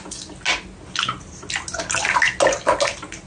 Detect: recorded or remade recorded